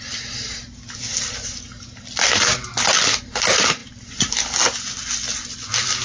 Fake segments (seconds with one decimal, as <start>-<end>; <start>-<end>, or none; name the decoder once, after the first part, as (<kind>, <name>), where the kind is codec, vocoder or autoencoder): none